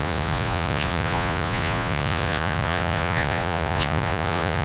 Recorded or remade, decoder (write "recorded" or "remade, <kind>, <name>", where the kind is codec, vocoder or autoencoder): remade, vocoder, Vocos